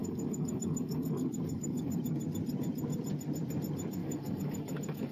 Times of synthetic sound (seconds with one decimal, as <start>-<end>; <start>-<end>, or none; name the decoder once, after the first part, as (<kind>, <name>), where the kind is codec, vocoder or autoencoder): 0.0-2.0 (codec, DAC); 4.0-5.1